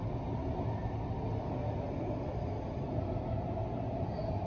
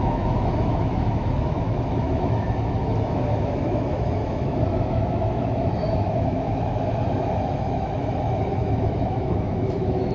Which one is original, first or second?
first